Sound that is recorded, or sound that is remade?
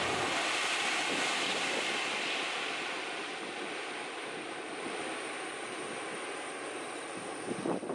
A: recorded